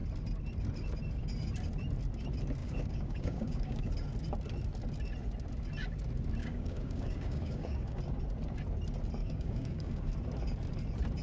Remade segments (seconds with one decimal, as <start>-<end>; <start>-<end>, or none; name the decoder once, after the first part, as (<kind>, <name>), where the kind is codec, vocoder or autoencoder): 2.6-3.9 (codec, DAC); 6.4-8.0; 9.2-10.1